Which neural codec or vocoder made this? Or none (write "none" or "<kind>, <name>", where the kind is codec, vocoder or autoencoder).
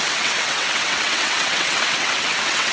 vocoder, WaveNeXt